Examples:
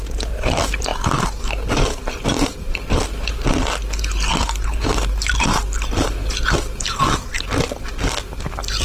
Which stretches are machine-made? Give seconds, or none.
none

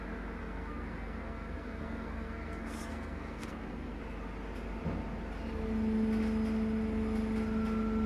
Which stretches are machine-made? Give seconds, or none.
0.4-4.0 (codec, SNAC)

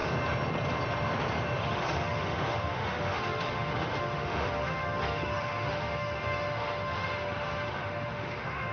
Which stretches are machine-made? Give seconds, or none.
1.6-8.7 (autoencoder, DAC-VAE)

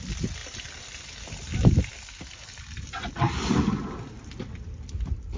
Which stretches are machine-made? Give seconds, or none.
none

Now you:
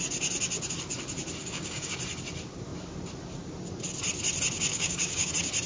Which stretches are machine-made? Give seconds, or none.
1.4-2.0 (codec, DAC); 4.7-5.3